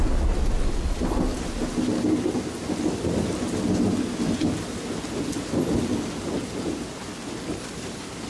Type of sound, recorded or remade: recorded